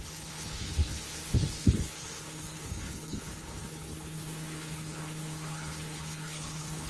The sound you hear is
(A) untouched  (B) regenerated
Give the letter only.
B